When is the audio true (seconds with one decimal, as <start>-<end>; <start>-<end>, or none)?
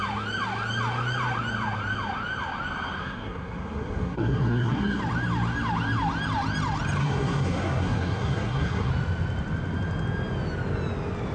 0.0-3.0; 5.0-7.0; 8.9-11.3